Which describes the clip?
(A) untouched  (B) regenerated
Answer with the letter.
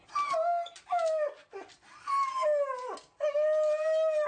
A